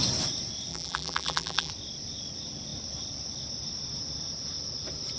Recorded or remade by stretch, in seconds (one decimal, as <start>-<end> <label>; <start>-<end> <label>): 0.0-0.7 recorded; 0.7-1.7 remade; 1.7-5.2 recorded